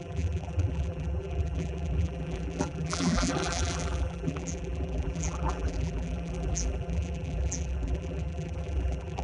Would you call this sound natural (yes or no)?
no